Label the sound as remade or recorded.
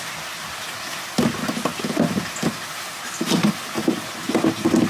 recorded